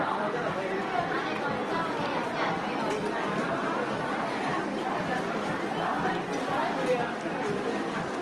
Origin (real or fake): fake